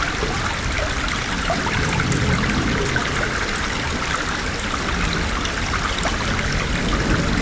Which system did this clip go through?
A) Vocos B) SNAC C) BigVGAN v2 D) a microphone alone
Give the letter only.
D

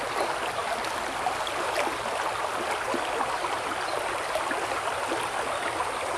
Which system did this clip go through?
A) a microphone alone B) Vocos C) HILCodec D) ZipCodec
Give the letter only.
A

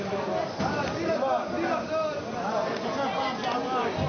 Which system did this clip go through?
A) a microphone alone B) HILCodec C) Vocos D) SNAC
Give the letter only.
A